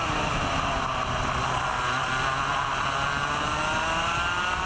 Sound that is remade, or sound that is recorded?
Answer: recorded